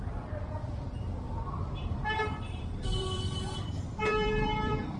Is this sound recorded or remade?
remade